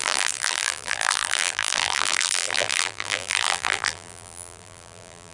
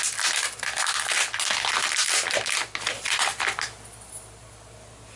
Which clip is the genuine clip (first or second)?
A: second